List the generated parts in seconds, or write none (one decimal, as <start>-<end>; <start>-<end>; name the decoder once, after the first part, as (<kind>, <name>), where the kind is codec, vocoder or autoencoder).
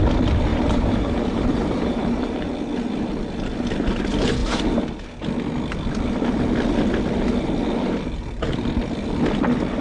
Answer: 0.5-2.5 (vocoder, BigVGAN v2)